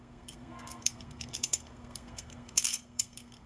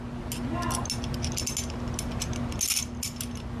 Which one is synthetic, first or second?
first